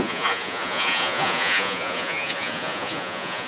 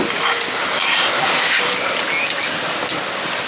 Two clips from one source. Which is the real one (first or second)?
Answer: second